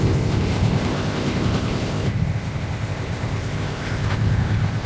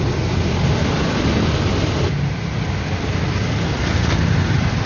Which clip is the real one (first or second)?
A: second